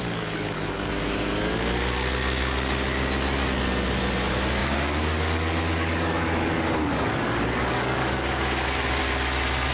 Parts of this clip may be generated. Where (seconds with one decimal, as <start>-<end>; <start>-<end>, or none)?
0.0-0.9; 4.6-9.0